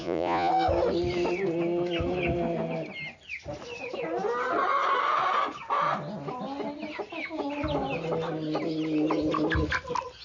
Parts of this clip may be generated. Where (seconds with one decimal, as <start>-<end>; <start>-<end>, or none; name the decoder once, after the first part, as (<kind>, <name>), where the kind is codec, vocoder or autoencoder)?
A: 0.0-0.5 (vocoder, Vocos)